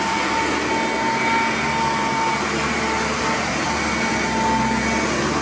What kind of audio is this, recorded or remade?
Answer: recorded